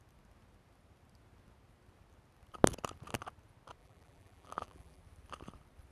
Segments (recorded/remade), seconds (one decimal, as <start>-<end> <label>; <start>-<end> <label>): 0.0-3.8 recorded; 3.8-5.0 remade; 5.0-5.9 recorded